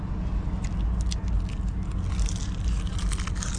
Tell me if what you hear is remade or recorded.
recorded